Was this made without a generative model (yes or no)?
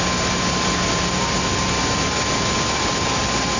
yes